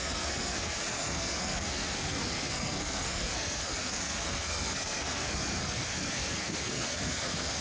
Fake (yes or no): yes